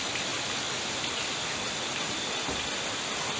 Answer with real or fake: real